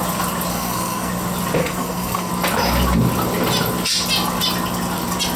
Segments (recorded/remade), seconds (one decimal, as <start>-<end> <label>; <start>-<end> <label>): 0.0-0.5 recorded; 0.5-1.1 remade; 1.1-1.6 recorded; 1.6-2.3 remade; 2.3-5.4 recorded